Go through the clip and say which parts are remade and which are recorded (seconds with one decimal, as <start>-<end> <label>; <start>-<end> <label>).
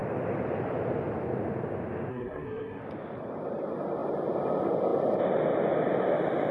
0.0-2.1 recorded; 2.1-2.8 remade; 2.8-6.5 recorded